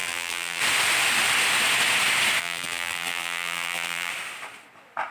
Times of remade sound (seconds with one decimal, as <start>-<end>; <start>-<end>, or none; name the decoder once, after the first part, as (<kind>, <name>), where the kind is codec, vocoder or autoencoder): 0.0-0.6 (vocoder, BigVGAN v2); 2.4-4.1